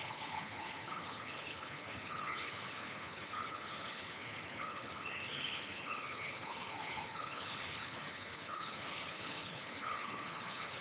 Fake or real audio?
fake